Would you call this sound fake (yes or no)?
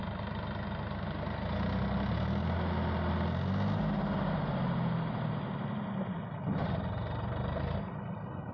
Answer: no